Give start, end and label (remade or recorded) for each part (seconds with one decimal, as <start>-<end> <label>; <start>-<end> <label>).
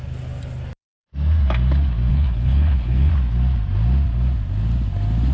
0.0-2.1 recorded; 2.1-3.1 remade; 3.1-5.3 recorded